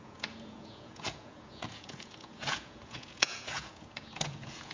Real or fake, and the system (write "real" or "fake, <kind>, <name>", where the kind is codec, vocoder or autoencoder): fake, vocoder, Vocos